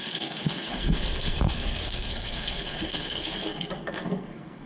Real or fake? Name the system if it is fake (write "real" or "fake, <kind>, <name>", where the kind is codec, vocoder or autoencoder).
fake, codec, SNAC